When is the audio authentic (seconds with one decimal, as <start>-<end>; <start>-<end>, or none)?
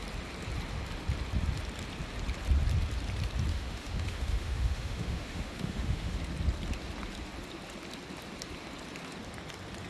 0.0-3.5; 6.2-9.9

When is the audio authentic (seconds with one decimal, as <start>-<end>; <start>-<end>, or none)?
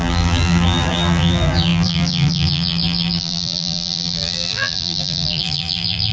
none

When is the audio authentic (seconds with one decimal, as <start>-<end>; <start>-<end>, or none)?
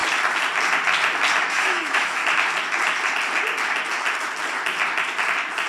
0.0-1.4; 2.2-5.7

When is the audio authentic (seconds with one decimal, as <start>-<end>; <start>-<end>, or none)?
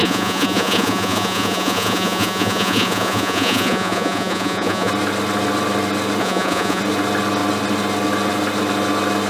4.9-6.2; 6.8-9.3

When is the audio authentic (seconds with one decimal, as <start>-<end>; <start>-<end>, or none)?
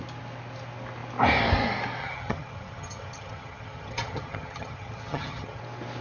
0.0-2.0; 5.6-6.0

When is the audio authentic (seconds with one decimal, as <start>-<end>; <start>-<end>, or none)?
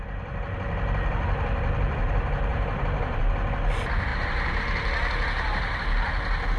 0.0-2.5; 3.2-4.1; 4.6-6.6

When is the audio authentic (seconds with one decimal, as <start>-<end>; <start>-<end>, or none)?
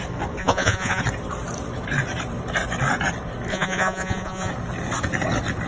0.0-0.4; 1.0-3.5; 4.5-5.7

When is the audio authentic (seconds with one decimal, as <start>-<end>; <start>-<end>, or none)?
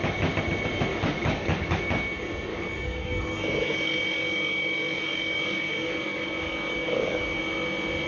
0.0-0.9; 1.8-2.5; 7.4-8.1